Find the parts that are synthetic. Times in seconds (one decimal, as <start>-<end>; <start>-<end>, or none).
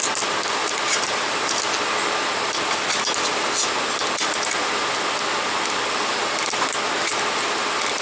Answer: 0.6-1.6